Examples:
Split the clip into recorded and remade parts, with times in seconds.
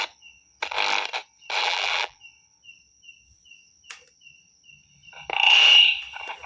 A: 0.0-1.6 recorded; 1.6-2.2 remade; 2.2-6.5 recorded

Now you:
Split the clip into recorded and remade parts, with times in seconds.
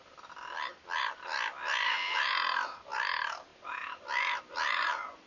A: 0.0-5.3 recorded